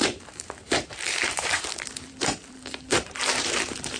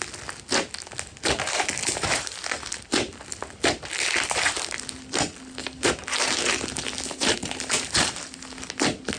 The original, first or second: second